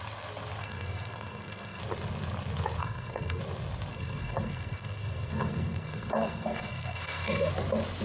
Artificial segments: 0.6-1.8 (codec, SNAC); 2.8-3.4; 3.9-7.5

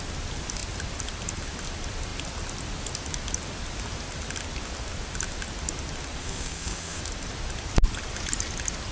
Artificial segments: 6.2-7.0 (codec, SNAC)

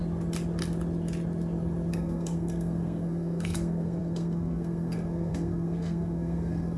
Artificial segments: 1.9-6.8 (codec, SNAC)

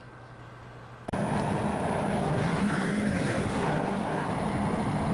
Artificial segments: 2.2-4.3 (codec, SNAC)

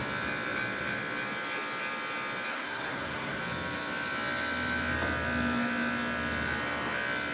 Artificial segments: 2.5-3.4 (codec, SNAC)

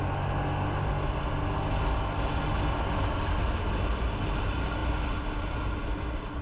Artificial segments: none

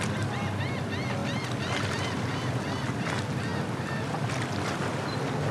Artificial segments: none